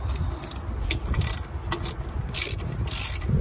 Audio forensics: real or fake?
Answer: real